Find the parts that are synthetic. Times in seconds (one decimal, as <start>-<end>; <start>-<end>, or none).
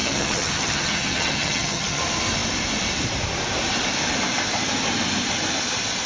0.0-2.0